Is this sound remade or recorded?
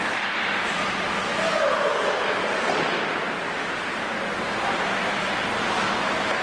recorded